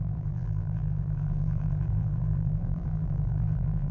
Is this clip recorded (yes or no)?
no